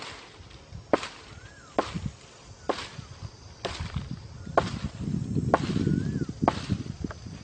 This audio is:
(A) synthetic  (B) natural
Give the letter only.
B